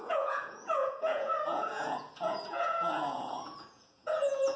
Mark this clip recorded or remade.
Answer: remade